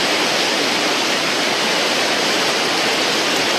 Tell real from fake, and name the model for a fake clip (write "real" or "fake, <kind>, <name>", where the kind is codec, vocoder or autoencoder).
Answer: real